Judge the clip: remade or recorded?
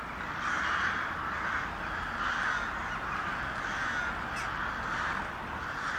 recorded